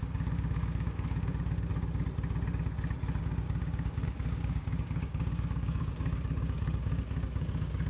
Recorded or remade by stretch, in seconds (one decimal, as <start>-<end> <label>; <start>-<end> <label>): 0.0-1.7 remade; 1.7-3.2 recorded; 3.2-7.9 remade